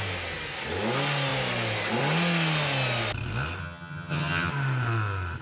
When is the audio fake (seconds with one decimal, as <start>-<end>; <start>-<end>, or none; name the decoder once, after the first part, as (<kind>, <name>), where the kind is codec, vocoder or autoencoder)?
3.6-4.5 (vocoder, HiFi-GAN)

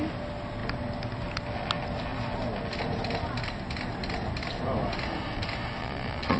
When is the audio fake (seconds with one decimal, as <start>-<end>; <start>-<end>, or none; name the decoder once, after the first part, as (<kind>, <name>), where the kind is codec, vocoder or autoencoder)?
5.8-6.4 (vocoder, Vocos)